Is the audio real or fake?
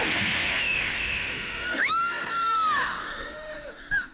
fake